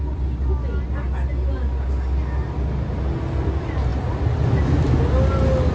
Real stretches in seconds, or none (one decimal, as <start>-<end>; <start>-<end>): 0.0-5.7